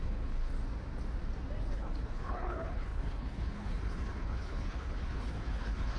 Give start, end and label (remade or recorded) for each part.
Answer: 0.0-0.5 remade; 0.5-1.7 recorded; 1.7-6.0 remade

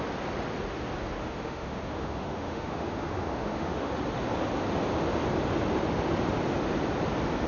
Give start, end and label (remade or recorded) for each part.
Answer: 0.0-1.2 recorded; 1.2-3.9 remade; 3.9-7.5 recorded

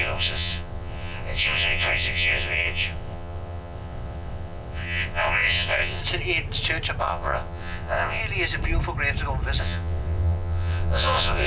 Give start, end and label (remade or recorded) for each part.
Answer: 0.0-6.0 remade; 6.0-7.0 recorded; 7.0-8.2 remade; 8.2-9.6 recorded; 9.6-11.5 remade

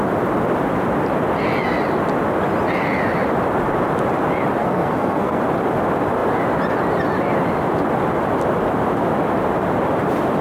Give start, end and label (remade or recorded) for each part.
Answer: 0.0-4.6 recorded; 4.6-5.4 remade; 5.4-10.4 recorded